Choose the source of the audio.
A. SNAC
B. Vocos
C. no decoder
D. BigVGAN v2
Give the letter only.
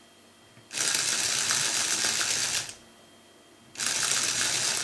C